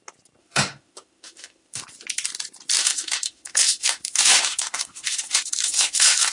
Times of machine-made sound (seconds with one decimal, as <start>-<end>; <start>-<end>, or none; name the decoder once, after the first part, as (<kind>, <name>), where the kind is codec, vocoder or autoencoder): 0.4-1.8 (autoencoder, DAC-VAE); 2.8-6.3